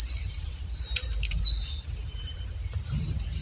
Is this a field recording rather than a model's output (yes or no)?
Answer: no